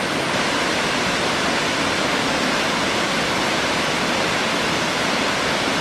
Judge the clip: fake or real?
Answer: fake